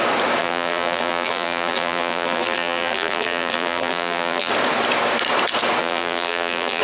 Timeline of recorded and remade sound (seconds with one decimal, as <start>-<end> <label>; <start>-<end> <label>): 0.0-0.4 recorded; 0.4-4.5 remade; 4.5-5.8 recorded; 5.8-6.8 remade